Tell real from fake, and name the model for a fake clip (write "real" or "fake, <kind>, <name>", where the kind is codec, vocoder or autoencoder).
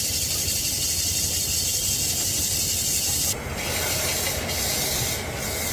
real